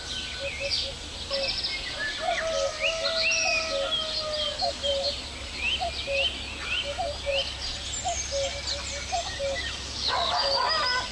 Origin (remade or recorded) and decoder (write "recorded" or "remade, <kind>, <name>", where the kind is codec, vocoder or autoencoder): recorded